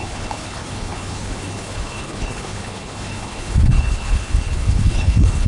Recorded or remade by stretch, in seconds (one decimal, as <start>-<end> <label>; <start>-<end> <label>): 0.0-5.5 remade